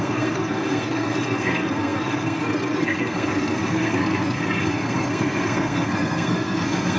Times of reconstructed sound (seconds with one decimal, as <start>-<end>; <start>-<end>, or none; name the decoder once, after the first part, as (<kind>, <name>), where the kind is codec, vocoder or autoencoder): 0.0-7.0 (codec, SNAC)

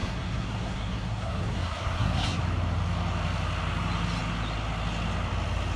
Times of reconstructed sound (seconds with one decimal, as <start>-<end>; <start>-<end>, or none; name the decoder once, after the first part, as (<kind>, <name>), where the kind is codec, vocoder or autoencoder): 0.0-2.4 (codec, SNAC)